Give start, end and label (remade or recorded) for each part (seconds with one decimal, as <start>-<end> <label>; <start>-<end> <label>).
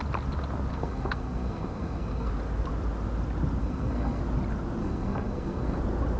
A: 0.0-0.7 recorded; 0.7-2.3 remade; 2.3-3.6 recorded; 3.6-4.2 remade; 4.2-4.8 recorded; 4.8-5.8 remade; 5.8-6.2 recorded